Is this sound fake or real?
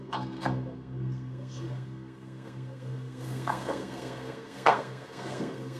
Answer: fake